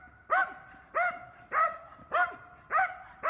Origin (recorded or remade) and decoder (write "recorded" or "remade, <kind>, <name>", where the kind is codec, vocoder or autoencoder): recorded